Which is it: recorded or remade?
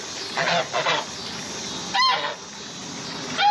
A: recorded